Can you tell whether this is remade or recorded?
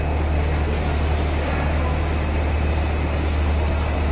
recorded